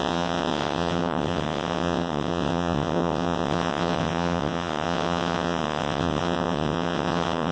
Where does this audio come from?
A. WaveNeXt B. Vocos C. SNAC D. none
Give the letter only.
A